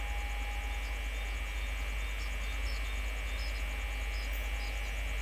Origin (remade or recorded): recorded